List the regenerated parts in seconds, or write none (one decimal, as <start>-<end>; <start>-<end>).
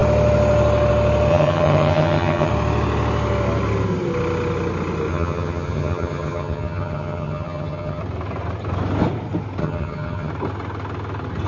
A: 1.3-2.5; 5.1-8.0; 9.6-10.3